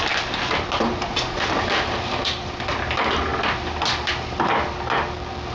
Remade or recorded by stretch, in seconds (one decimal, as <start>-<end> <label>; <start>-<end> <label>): 0.0-3.3 recorded; 3.3-4.7 remade; 4.7-5.5 recorded